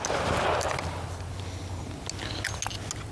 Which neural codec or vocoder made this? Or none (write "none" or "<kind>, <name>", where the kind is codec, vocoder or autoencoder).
none